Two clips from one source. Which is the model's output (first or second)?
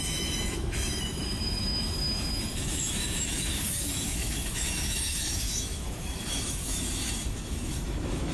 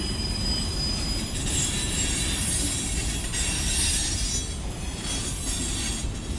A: first